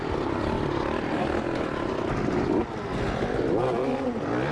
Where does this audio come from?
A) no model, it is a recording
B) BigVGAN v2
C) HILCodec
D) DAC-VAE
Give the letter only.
A